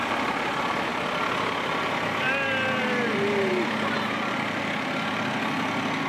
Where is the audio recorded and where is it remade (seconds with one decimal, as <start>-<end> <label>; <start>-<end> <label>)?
0.0-3.5 recorded; 3.5-4.6 remade; 4.6-6.1 recorded